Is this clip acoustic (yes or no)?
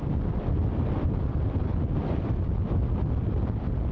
yes